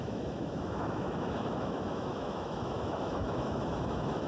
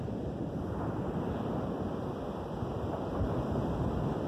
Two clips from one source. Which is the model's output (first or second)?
first